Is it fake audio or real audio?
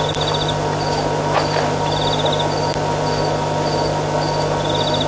real